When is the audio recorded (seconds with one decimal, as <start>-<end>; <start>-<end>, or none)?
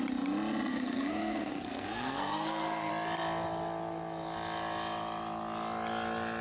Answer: 0.0-0.7; 2.9-6.4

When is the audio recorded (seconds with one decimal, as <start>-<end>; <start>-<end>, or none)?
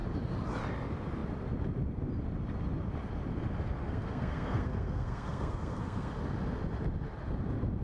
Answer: 0.0-3.8; 6.1-7.8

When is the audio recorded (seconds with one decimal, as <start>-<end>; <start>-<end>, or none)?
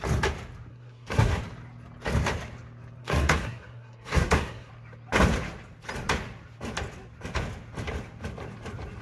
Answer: 0.0-0.7; 1.4-3.0; 4.7-9.0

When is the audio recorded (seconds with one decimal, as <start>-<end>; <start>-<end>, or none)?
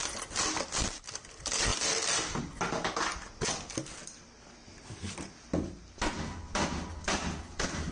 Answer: 0.0-7.9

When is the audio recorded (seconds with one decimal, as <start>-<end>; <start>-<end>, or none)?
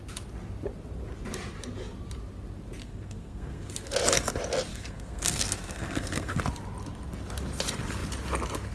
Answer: 0.0-2.8; 3.7-4.7; 6.4-8.7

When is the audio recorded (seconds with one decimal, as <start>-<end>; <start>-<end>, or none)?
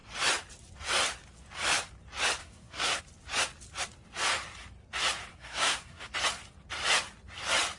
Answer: 0.0-2.4; 3.0-5.3; 6.0-7.8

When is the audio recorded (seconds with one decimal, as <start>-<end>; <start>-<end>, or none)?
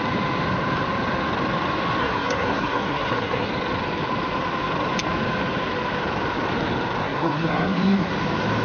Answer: 0.0-2.0; 3.5-7.0; 8.1-8.6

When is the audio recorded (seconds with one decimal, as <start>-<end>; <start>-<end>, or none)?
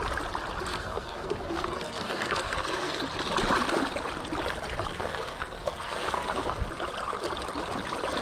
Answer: 0.0-0.7; 3.0-4.9; 6.6-8.2